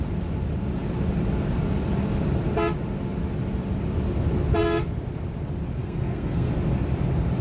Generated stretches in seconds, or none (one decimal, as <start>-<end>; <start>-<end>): 5.8-6.5